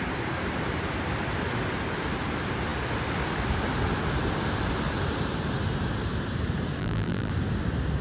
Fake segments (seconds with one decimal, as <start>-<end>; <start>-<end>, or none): 6.8-7.3